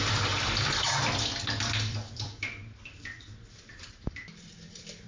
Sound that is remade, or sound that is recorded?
remade